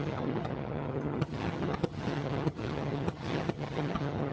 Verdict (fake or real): fake